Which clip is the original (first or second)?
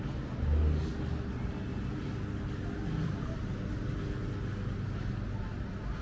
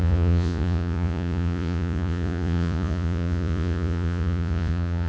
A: first